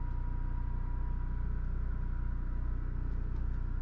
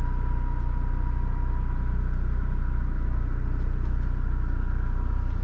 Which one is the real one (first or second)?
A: first